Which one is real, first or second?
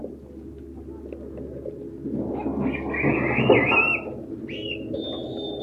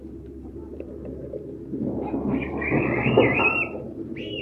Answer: first